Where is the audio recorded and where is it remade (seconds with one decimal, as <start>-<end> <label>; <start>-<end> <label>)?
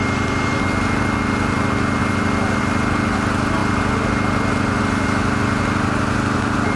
0.0-6.8 recorded